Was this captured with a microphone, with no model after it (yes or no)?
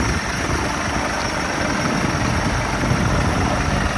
yes